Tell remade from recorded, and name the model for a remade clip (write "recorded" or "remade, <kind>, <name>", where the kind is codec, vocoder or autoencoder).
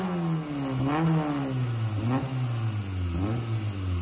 recorded